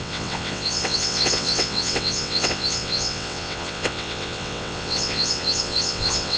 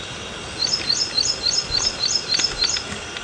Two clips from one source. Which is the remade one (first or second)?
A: first